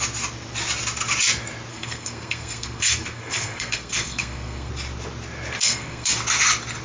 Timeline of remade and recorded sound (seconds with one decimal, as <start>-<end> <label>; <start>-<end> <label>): 0.0-1.7 recorded; 1.7-4.7 remade; 4.7-5.6 recorded; 5.6-6.1 remade; 6.1-6.8 recorded